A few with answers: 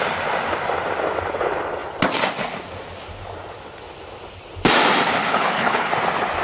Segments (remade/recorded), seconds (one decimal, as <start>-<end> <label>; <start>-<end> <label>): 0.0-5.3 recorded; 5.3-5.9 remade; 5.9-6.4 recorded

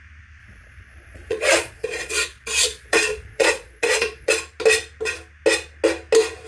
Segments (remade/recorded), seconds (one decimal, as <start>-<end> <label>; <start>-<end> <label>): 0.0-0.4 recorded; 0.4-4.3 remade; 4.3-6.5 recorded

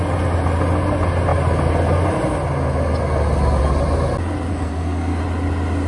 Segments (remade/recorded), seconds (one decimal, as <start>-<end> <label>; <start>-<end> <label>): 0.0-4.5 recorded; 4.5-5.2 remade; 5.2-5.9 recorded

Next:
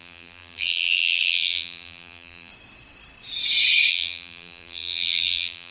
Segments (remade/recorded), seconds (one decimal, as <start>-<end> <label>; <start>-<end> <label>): 0.0-2.5 remade; 2.5-3.9 recorded; 3.9-5.7 remade

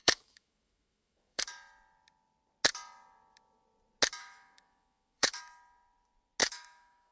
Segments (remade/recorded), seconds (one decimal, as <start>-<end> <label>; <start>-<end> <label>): 0.0-1.4 remade; 1.4-4.2 recorded; 4.2-5.4 remade; 5.4-6.4 recorded; 6.4-7.1 remade

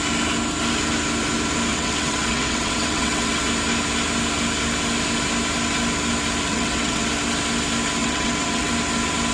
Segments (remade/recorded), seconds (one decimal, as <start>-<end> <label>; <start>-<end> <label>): 0.0-1.7 recorded; 1.7-3.5 remade; 3.5-6.5 recorded; 6.5-7.1 remade; 7.1-8.0 recorded; 8.0-8.7 remade; 8.7-9.3 recorded

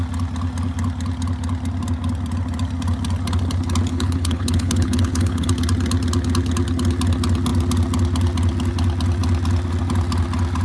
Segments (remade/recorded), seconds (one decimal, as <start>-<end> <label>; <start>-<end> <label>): 0.0-3.9 recorded; 3.9-5.5 remade; 5.5-10.6 recorded

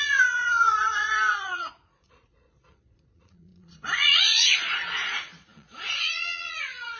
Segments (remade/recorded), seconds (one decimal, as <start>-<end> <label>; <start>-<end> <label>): 0.0-7.0 remade